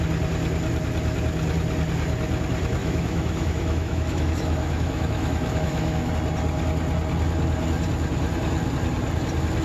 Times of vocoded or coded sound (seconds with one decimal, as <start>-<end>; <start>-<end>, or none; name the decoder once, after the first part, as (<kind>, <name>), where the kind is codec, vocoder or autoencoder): 2.8-6.1 (autoencoder, DAC-VAE)